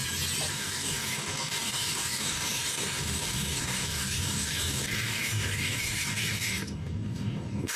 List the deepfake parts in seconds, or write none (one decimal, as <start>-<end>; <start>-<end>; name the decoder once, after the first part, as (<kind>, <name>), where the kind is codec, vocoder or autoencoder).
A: 0.5-7.8 (codec, DAC)